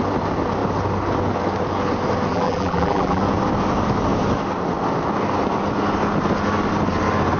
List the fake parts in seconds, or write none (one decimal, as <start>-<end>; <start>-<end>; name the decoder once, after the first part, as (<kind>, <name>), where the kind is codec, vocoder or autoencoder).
2.3-3.2 (vocoder, BigVGAN v2)